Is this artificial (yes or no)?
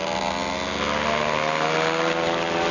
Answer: no